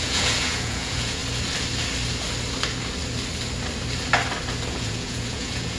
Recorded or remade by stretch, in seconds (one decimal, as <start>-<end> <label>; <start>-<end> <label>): 0.0-1.2 remade; 1.2-4.7 recorded; 4.7-5.8 remade